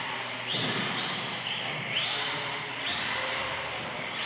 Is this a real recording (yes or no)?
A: yes